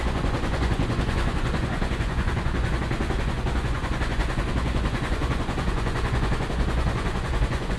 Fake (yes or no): yes